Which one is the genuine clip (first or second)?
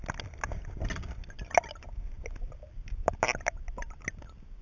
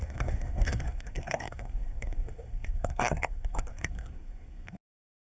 first